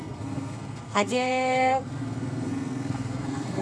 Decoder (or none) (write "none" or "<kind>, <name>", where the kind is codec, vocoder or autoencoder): codec, SNAC